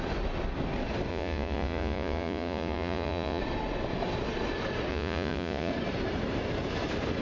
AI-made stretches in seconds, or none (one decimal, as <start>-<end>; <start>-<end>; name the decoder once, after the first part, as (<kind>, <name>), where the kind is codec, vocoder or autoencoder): 1.1-3.4 (vocoder, Vocos); 4.9-5.7